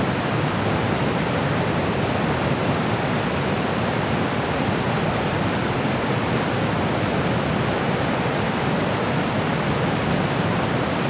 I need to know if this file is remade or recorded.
remade